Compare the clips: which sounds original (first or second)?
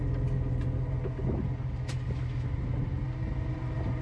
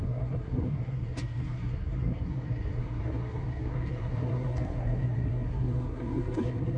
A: first